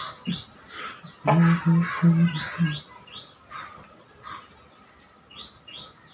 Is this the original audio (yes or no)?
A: yes